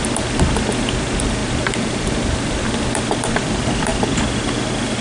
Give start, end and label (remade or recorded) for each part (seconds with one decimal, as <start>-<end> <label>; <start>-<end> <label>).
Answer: 0.0-1.4 recorded; 1.4-2.5 remade; 2.5-5.0 recorded